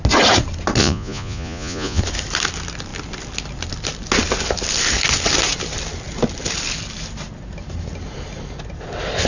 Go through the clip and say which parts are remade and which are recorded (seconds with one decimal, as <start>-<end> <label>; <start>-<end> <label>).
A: 0.0-0.8 recorded; 0.8-2.0 remade; 2.0-9.3 recorded